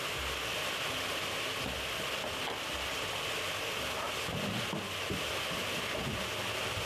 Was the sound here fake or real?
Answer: real